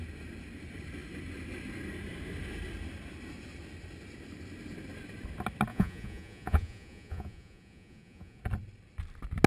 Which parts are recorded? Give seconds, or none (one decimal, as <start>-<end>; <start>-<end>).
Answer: 0.0-5.7; 8.4-9.5